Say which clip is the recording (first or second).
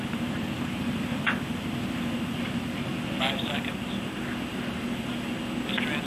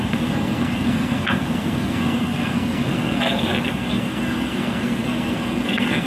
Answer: first